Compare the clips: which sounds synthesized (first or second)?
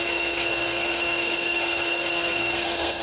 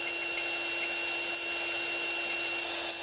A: first